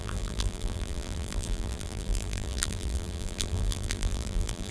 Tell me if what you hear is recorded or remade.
remade